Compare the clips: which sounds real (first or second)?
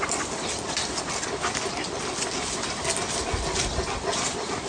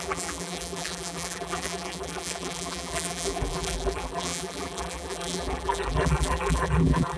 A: first